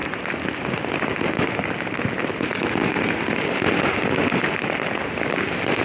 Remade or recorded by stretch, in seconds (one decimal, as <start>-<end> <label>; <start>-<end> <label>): 0.0-5.8 recorded